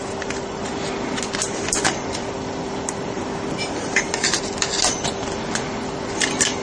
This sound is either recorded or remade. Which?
recorded